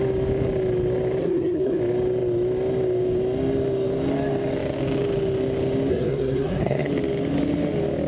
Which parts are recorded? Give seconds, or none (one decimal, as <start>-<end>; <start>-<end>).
0.0-1.2; 1.8-5.9; 6.9-8.1